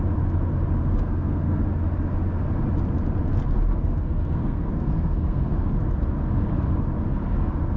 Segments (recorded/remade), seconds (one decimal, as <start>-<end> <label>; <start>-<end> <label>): 0.0-0.8 recorded; 0.8-1.6 remade; 1.6-3.7 recorded; 3.7-5.5 remade; 5.5-7.8 recorded